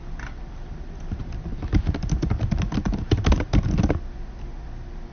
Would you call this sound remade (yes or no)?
no